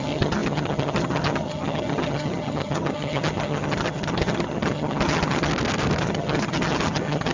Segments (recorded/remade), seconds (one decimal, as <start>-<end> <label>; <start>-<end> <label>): 0.0-5.5 remade; 5.5-6.0 recorded; 6.0-7.3 remade